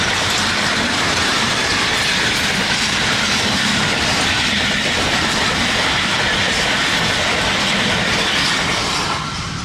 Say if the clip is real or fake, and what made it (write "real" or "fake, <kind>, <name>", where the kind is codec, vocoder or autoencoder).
real